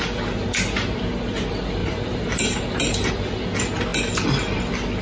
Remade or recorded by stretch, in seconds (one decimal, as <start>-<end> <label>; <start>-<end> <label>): 0.0-1.8 recorded; 1.8-3.1 remade; 3.1-5.0 recorded